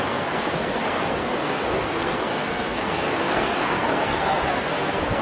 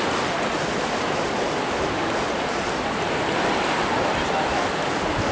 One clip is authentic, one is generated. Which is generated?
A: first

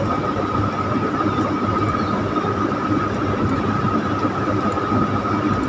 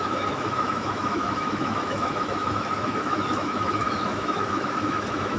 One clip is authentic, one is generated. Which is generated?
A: second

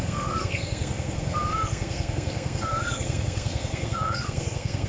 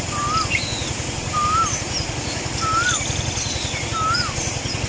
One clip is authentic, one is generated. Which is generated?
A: first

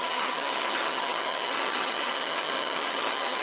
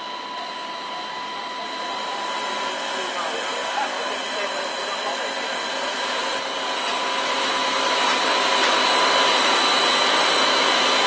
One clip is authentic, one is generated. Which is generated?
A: first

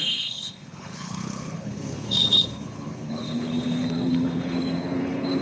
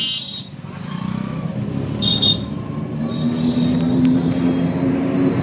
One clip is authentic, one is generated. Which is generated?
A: first